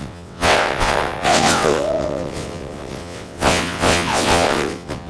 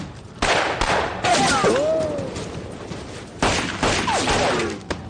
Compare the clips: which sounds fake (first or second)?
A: first